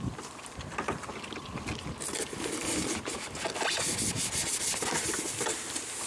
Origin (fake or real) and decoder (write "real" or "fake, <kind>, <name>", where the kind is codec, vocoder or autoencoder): real